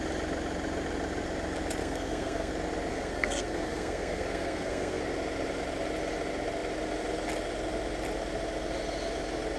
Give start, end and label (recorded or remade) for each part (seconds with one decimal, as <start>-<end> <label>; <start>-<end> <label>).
0.0-1.8 recorded; 1.8-2.5 remade; 2.5-2.9 recorded; 2.9-5.0 remade; 5.0-9.6 recorded